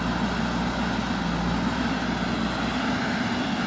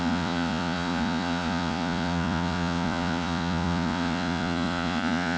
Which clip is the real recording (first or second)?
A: first